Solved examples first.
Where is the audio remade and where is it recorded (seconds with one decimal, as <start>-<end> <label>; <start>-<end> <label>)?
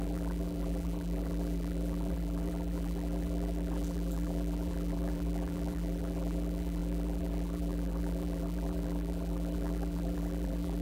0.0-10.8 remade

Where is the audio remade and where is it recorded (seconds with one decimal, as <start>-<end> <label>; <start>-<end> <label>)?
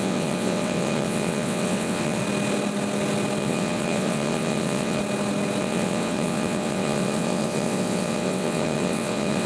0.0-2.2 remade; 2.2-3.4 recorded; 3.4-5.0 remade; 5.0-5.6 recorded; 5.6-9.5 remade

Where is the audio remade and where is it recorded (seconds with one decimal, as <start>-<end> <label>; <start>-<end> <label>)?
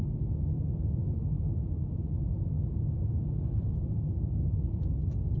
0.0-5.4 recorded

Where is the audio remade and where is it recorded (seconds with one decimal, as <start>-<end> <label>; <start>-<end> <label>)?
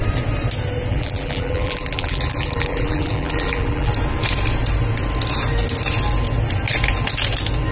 0.0-0.9 recorded; 0.9-3.9 remade; 3.9-7.7 recorded